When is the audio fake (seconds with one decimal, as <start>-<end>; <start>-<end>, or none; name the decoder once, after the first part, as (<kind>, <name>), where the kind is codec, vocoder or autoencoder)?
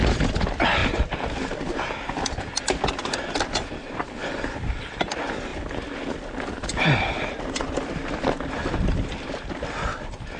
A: none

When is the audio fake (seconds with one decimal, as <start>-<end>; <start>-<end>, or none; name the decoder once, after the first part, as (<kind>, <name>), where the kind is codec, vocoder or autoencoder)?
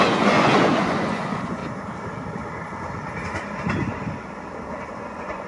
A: 0.0-1.6 (vocoder, Vocos); 4.9-5.5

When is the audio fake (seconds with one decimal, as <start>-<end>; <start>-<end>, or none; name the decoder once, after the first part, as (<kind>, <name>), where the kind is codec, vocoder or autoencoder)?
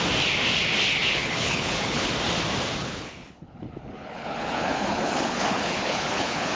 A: 1.1-2.1 (codec, HILCodec); 2.8-6.6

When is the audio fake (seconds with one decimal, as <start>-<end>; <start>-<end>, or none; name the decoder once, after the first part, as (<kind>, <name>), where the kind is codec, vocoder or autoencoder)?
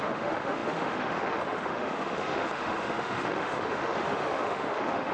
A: 0.0-5.1 (autoencoder, DAC-VAE)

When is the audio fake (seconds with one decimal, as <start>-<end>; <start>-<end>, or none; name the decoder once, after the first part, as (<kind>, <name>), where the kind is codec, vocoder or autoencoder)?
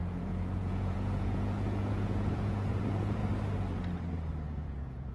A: 0.0-3.2 (vocoder, Vocos); 4.3-5.1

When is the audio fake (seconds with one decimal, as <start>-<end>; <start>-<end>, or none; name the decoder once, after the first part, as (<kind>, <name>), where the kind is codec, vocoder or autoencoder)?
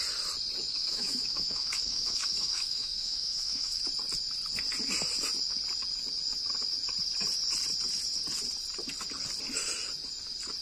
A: 0.7-3.8 (autoencoder, DAC-VAE)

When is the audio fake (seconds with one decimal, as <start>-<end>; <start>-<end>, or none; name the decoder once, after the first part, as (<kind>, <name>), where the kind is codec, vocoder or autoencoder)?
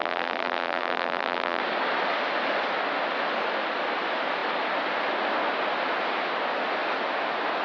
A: 0.0-1.6 (vocoder, BigVGAN v2)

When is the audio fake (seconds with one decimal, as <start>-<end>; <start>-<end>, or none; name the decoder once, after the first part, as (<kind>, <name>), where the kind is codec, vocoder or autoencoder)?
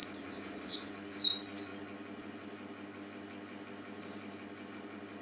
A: 0.0-0.9 (vocoder, Vocos)